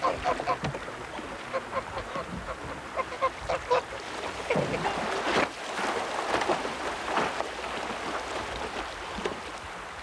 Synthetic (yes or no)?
no